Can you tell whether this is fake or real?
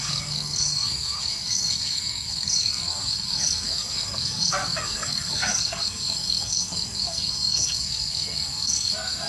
fake